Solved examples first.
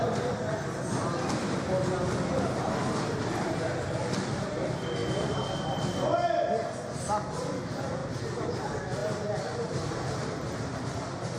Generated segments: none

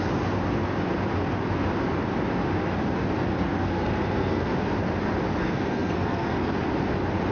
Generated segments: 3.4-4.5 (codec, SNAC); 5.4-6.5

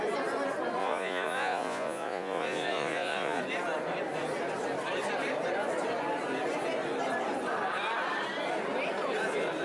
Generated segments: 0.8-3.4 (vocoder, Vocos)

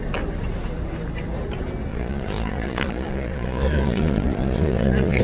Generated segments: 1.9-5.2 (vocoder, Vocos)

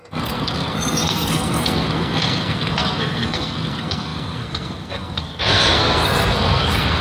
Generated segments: 0.0-7.0 (codec, SNAC)

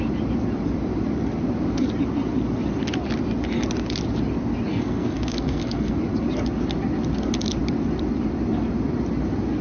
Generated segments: 4.7-6.0 (codec, SNAC)